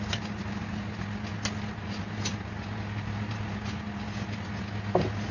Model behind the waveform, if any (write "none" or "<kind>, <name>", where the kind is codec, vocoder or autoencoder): none